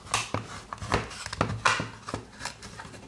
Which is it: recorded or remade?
recorded